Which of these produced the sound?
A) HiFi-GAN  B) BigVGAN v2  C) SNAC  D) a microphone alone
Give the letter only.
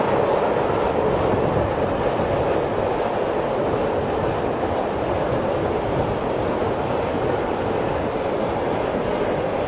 D